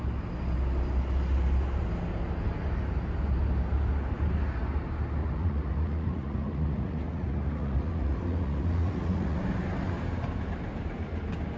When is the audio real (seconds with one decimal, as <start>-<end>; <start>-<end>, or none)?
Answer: 0.0-5.2; 9.4-11.6